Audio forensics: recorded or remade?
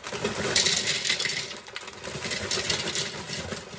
recorded